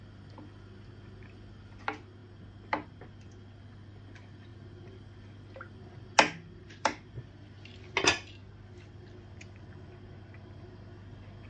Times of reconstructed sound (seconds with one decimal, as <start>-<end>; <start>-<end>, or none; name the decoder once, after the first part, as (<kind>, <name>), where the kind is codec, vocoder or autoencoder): 6.6-7.2 (vocoder, BigVGAN v2)

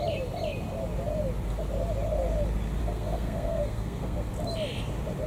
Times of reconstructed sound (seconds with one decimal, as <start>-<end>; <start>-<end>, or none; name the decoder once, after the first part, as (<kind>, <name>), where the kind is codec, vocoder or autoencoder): 2.8-4.3 (codec, SNAC)

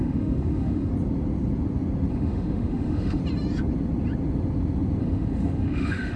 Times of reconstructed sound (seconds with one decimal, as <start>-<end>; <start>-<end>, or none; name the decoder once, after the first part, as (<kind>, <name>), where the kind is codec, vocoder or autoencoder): 0.0-0.9 (autoencoder, DAC-VAE); 2.1-3.2; 5.0-6.2

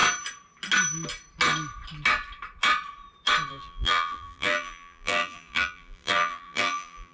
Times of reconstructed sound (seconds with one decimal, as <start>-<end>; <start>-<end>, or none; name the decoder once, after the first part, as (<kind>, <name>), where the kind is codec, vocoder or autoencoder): 3.5-7.1 (vocoder, BigVGAN v2)